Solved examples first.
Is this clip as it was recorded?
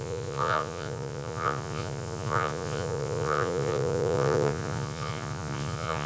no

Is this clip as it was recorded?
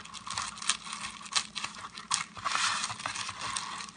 yes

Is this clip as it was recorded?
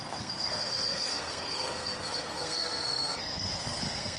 no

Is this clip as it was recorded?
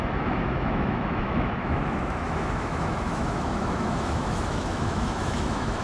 no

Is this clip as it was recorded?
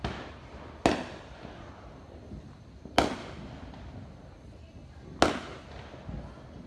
yes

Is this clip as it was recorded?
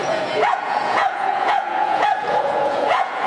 no